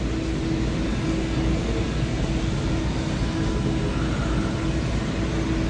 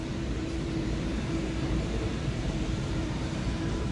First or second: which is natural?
first